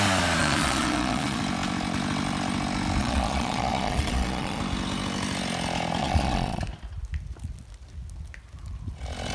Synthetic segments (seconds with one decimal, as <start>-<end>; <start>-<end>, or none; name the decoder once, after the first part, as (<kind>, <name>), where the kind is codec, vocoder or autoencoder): 0.4-1.4 (vocoder, Vocos); 3.0-4.6; 6.0-6.6